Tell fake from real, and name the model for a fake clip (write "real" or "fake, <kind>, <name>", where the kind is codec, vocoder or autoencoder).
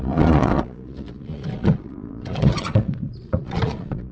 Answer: fake, vocoder, Vocos